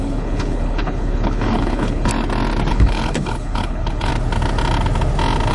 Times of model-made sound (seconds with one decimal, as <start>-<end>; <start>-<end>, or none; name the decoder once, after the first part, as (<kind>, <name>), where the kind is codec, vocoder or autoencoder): 0.0-2.1 (codec, HILCodec); 2.7-4.1